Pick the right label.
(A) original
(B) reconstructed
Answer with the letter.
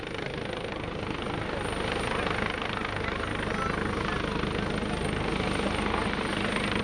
A